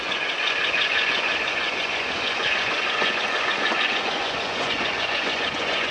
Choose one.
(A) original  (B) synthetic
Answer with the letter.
B